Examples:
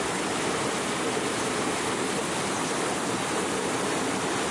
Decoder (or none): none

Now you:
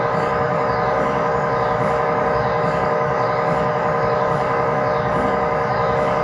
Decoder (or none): codec, DAC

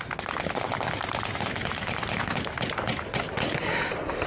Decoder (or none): none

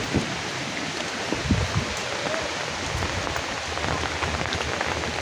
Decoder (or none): none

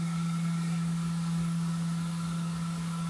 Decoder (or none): codec, DAC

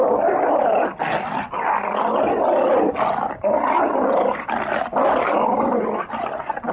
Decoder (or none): none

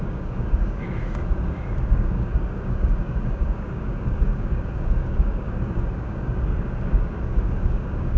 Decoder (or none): codec, DAC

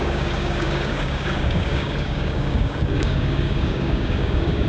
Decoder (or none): codec, DAC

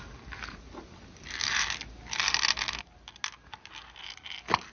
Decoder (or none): none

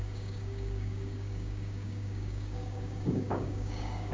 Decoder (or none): codec, DAC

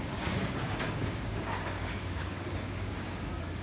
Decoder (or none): codec, DAC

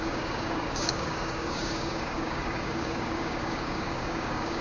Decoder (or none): codec, DAC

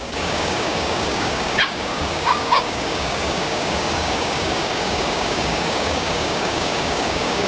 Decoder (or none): codec, DAC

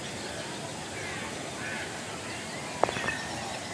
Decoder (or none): none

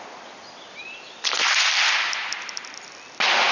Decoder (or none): none